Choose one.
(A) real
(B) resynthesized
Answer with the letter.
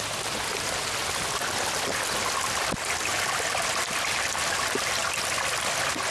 A